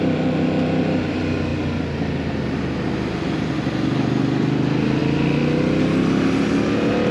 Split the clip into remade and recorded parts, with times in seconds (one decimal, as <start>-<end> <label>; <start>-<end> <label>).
0.0-7.1 recorded